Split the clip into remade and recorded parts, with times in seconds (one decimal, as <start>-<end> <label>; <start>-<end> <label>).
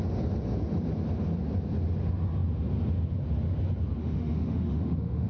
0.0-4.0 recorded; 4.0-5.3 remade